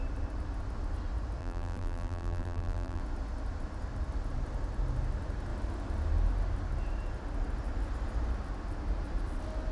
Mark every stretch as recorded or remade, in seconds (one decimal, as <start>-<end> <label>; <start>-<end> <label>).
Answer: 0.0-1.4 recorded; 1.4-3.0 remade; 3.0-9.7 recorded